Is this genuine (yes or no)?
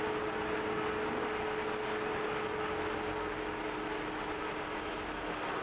yes